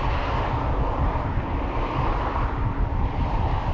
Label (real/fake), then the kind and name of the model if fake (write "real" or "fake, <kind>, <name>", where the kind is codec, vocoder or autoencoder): real